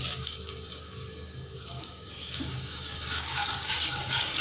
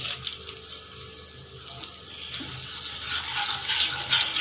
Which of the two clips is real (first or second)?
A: second